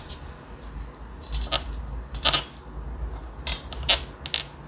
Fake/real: real